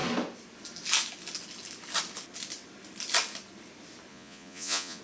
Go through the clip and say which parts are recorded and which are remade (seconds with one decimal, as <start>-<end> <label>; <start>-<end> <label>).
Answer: 0.0-4.1 recorded; 4.1-5.0 remade